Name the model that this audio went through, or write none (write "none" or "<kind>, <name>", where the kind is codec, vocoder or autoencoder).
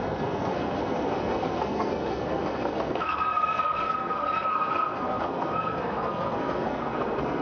codec, SNAC